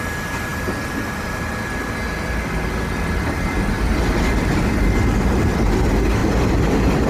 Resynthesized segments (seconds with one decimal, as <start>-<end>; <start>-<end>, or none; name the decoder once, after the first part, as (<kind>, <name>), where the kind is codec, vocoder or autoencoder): none

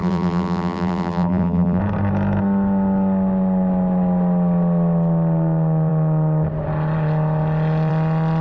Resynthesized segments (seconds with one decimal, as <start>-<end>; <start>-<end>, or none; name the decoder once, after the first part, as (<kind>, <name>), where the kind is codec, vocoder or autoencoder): 0.0-1.8 (vocoder, BigVGAN v2)

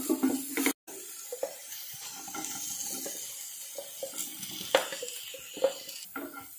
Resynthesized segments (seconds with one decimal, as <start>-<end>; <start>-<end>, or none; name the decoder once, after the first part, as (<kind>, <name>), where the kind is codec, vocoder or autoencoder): 1.3-2.3 (vocoder, BigVGAN v2)

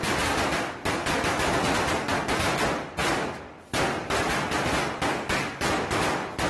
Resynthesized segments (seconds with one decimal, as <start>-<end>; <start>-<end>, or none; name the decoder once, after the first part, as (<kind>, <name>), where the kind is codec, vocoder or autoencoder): none

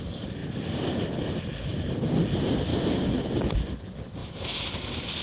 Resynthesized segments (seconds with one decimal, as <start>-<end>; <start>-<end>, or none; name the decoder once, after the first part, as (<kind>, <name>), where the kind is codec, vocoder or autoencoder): 0.0-0.4 (vocoder, BigVGAN v2); 1.5-5.2

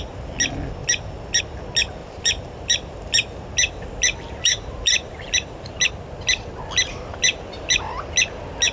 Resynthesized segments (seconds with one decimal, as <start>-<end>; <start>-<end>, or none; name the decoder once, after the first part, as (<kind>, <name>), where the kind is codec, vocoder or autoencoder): 0.8-1.4 (vocoder, BigVGAN v2); 2.0-5.9; 6.9-7.8